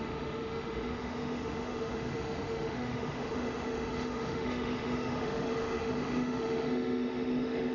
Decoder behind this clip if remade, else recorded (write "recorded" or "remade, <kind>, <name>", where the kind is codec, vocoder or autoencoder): remade, autoencoder, DAC-VAE